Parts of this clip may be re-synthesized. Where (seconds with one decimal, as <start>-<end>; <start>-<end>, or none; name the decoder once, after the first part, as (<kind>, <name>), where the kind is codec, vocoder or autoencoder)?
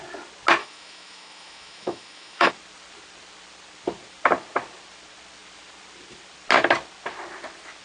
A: 0.6-2.5 (autoencoder, DAC-VAE)